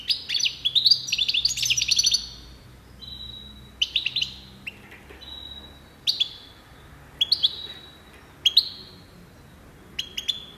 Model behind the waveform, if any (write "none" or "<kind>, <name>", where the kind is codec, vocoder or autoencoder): none